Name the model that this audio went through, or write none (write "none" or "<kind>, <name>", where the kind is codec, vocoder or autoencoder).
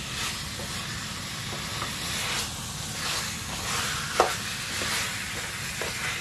none